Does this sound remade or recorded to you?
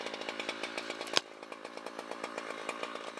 recorded